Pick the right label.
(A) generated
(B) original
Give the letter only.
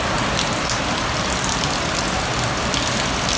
B